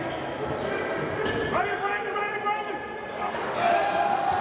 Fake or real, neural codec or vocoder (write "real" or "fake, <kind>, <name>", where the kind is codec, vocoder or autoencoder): real